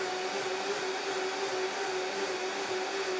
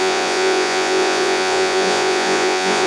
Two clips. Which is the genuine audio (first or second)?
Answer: first